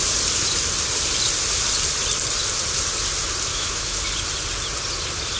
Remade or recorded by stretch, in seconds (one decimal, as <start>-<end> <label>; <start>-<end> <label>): 0.0-3.5 recorded; 3.5-4.0 remade; 4.0-5.4 recorded